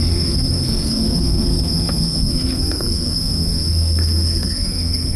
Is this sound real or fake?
fake